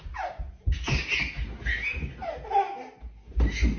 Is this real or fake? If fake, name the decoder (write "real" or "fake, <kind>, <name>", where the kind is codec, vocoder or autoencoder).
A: real